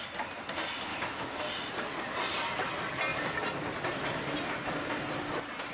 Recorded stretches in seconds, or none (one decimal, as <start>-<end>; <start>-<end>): 0.0-0.9; 1.4-5.7